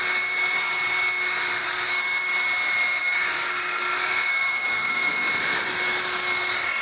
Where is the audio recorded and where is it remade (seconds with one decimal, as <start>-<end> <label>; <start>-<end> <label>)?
0.0-1.6 recorded; 1.6-2.3 remade; 2.3-3.0 recorded; 3.0-3.8 remade; 3.8-4.3 recorded; 4.3-5.1 remade; 5.1-6.8 recorded